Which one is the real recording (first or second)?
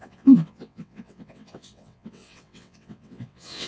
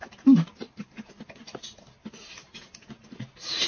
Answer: second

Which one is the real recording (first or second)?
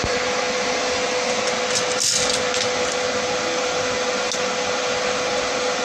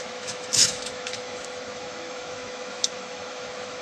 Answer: first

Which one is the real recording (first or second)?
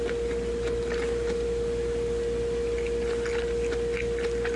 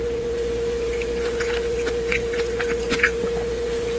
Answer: first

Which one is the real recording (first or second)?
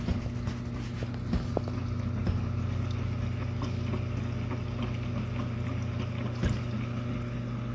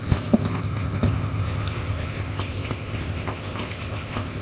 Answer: first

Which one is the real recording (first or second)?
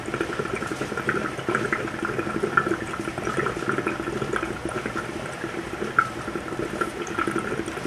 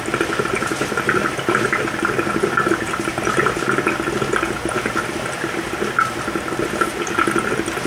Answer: second